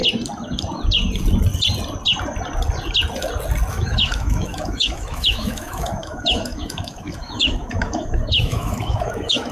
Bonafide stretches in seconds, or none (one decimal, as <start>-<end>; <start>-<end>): 0.0-3.7